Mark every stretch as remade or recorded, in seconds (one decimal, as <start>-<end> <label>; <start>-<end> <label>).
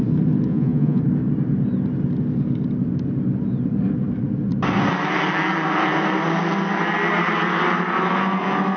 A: 0.0-0.5 recorded; 0.5-1.0 remade; 1.0-8.8 recorded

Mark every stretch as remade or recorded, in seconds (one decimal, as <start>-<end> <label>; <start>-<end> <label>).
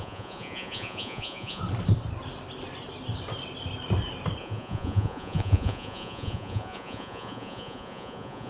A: 0.0-1.6 remade; 1.6-4.4 recorded; 4.4-8.5 remade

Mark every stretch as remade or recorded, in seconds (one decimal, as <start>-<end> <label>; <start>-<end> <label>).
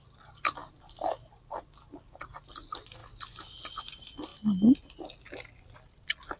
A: 0.0-6.4 recorded